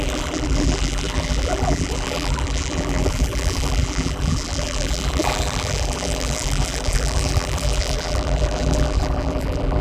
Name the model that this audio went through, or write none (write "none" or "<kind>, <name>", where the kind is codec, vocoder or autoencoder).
vocoder, BigVGAN v2